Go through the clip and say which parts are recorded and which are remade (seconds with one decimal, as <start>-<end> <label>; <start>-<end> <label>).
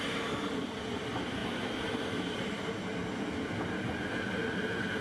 0.0-5.0 recorded